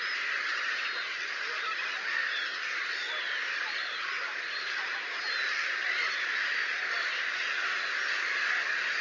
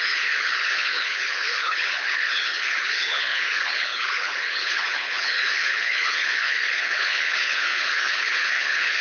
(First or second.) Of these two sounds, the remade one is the second